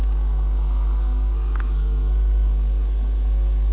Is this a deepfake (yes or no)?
yes